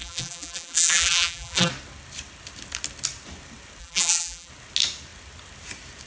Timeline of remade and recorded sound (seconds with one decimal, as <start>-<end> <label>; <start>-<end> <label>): 0.0-1.7 remade; 1.7-3.8 recorded; 3.8-4.5 remade; 4.5-6.1 recorded

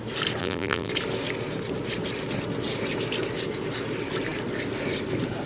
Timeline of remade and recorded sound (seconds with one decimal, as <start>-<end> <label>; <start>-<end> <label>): 0.0-0.4 recorded; 0.4-0.9 remade; 0.9-5.5 recorded

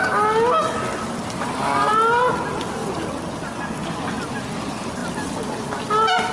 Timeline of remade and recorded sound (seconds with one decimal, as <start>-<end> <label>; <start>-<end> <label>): 0.0-6.3 recorded

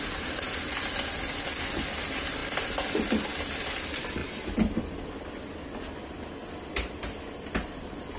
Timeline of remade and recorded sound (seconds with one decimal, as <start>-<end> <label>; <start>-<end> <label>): 0.0-8.2 recorded

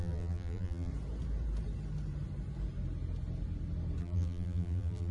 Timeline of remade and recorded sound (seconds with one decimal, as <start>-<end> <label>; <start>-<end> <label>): 0.0-0.9 remade; 0.9-4.0 recorded; 4.0-5.1 remade

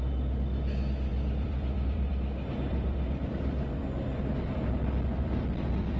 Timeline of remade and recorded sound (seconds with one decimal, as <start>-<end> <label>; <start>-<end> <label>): 0.0-1.1 recorded; 1.1-2.1 remade; 2.1-2.7 recorded; 2.7-3.8 remade; 3.8-5.1 recorded; 5.1-6.0 remade

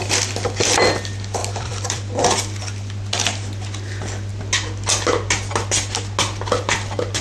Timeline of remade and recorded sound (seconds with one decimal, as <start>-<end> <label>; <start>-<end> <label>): 0.0-1.4 recorded; 1.4-2.2 remade; 2.2-7.2 recorded

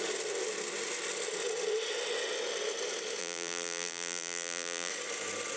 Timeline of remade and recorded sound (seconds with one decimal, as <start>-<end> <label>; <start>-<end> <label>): 0.0-3.2 recorded; 3.2-4.9 remade; 4.9-5.6 recorded